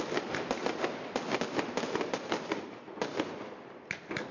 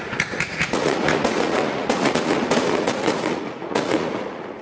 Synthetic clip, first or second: second